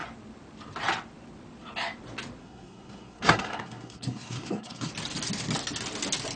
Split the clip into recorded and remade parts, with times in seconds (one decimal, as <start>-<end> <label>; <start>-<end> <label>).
0.0-2.4 recorded; 2.4-4.9 remade; 4.9-6.4 recorded